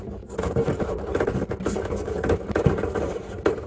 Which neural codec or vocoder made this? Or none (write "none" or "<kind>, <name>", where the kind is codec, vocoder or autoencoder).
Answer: none